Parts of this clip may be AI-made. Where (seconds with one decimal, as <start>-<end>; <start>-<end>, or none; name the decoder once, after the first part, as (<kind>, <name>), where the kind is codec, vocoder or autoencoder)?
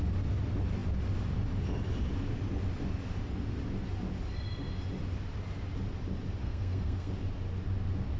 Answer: 6.4-7.1 (codec, SNAC)